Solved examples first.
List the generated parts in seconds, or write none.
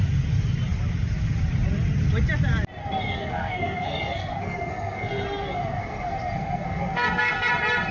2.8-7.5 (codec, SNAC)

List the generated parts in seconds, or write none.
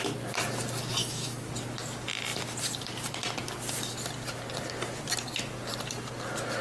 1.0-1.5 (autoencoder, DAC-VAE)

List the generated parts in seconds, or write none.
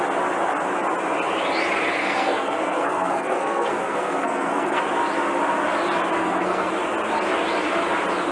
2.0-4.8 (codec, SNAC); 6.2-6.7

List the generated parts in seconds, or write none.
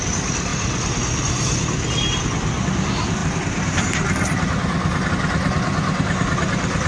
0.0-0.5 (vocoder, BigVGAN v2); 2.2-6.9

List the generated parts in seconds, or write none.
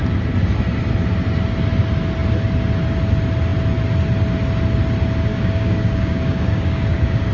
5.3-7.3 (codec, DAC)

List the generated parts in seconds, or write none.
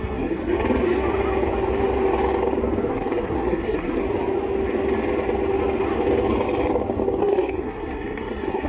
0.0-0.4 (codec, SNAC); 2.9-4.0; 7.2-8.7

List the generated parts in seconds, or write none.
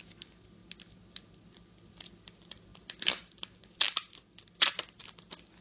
none